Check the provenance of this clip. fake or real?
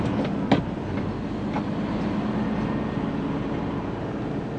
real